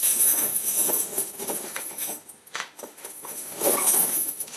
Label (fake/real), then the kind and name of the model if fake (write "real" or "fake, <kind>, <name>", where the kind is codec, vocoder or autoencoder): fake, autoencoder, DAC-VAE